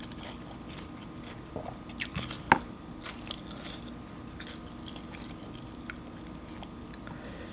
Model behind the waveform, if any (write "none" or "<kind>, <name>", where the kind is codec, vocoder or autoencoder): none